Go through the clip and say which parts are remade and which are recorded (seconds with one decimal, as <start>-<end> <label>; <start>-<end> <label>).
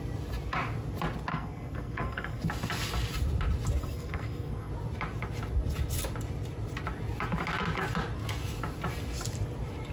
0.0-1.3 recorded; 1.3-2.4 remade; 2.4-3.8 recorded; 3.8-4.7 remade; 4.7-9.9 recorded